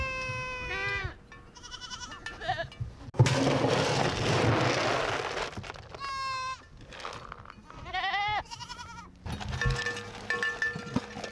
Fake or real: real